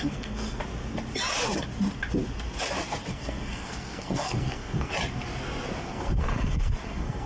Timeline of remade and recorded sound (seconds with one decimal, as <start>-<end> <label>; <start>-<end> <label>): 0.0-0.6 remade; 0.6-3.1 recorded; 3.1-4.9 remade; 4.9-5.8 recorded; 5.8-7.3 remade